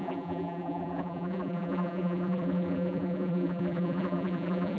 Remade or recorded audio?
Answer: remade